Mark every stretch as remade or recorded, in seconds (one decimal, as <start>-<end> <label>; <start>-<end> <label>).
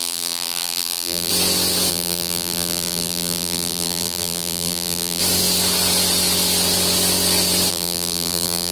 0.0-1.3 remade; 1.3-1.9 recorded; 1.9-5.2 remade; 5.2-7.7 recorded; 7.7-8.7 remade